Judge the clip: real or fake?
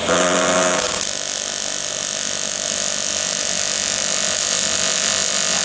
real